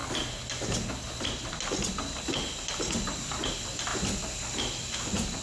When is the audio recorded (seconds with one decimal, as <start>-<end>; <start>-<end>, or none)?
0.0-3.9